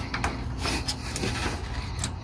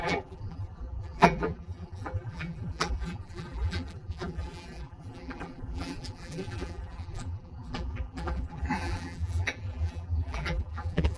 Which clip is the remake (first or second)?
second